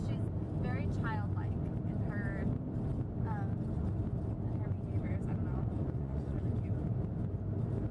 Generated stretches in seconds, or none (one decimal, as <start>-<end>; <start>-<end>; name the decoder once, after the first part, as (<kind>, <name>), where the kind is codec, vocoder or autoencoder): 5.5-6.6 (vocoder, Vocos)